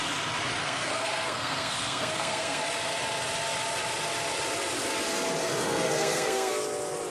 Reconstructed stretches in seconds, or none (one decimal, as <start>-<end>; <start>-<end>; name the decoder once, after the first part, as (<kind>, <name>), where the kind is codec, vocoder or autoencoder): 0.6-2.6 (codec, SNAC); 5.4-6.5